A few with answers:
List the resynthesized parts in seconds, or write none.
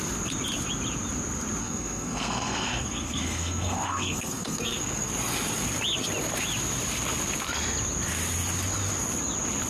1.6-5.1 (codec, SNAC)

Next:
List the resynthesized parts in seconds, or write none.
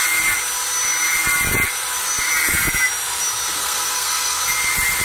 3.6-4.4 (codec, SNAC)